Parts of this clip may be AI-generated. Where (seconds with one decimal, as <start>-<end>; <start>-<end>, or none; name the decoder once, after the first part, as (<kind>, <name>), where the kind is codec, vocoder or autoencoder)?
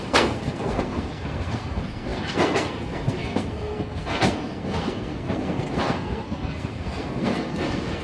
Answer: 0.0-8.0 (codec, SNAC)